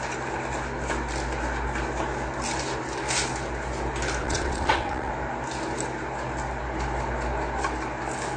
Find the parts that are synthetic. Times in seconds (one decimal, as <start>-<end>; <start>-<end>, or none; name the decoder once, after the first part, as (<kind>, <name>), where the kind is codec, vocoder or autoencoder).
4.2-5.1 (vocoder, WaveNeXt)